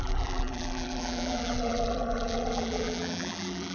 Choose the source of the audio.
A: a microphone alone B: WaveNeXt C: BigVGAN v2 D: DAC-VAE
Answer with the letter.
C